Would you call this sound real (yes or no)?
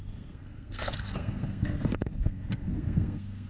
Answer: no